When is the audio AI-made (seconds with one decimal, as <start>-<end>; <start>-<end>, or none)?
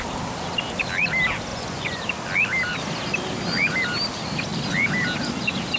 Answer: 1.5-2.0